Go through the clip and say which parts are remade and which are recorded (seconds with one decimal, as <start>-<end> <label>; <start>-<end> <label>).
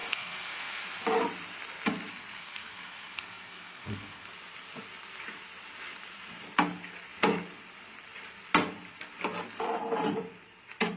0.0-0.8 remade; 0.8-2.1 recorded; 2.1-4.3 remade; 4.3-11.0 recorded